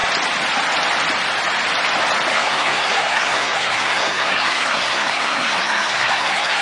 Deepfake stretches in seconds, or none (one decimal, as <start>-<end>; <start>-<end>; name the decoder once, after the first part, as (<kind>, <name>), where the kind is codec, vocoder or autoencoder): 2.3-6.6 (codec, SNAC)